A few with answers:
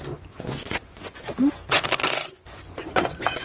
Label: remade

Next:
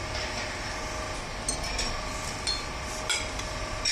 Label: recorded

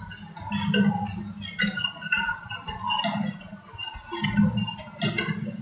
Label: recorded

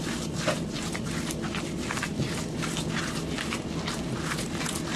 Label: recorded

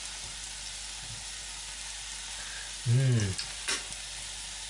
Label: recorded